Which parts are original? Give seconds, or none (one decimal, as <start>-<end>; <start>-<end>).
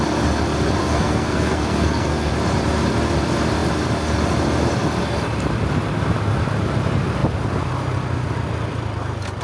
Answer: 0.0-0.8; 2.3-9.4